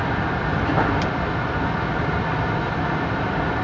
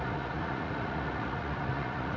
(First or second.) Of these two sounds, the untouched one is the first